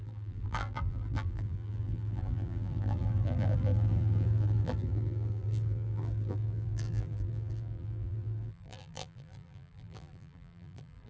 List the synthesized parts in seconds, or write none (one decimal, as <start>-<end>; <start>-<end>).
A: 0.0-11.1